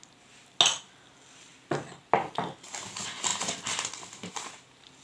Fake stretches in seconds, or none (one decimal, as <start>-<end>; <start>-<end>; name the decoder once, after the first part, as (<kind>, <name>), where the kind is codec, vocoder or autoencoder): none